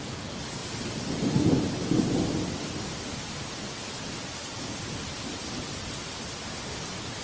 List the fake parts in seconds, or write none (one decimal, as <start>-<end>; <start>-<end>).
0.6-3.1